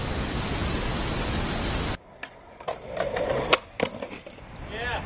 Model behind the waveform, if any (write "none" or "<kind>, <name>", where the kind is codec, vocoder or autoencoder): none